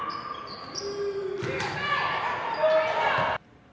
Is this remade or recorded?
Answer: recorded